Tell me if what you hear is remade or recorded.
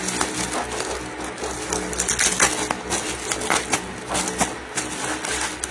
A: recorded